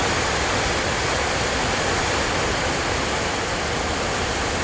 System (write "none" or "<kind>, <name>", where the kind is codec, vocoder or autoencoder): none